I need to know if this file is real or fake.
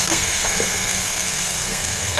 fake